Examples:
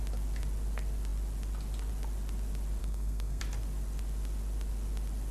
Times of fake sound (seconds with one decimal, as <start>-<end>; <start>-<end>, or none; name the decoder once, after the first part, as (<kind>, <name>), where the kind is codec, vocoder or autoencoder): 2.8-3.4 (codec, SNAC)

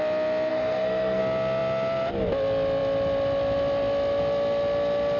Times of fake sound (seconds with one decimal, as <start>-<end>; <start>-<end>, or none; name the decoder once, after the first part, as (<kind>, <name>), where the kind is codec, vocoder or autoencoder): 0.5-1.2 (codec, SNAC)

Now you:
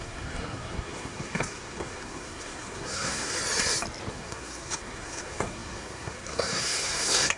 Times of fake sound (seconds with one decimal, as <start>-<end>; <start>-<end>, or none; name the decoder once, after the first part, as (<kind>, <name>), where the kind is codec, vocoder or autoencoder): 0.0-3.3 (codec, SNAC); 4.1-7.4